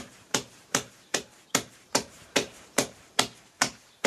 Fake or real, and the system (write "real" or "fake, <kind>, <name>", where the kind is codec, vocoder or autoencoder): fake, vocoder, BigVGAN v2